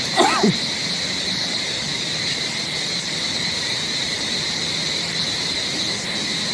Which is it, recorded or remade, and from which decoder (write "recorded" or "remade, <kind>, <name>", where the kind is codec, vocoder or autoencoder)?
recorded